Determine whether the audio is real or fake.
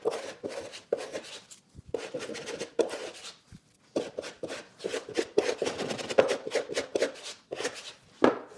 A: real